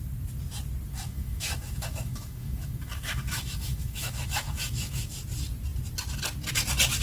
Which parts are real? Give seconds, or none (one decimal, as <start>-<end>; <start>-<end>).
0.0-0.9; 5.1-7.0